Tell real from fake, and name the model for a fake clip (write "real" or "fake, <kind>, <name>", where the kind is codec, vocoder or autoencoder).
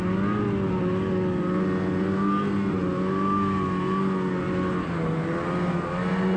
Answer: real